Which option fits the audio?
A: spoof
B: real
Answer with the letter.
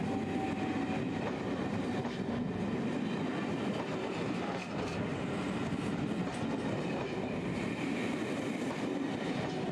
B